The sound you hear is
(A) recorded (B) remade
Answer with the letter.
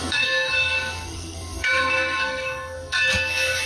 B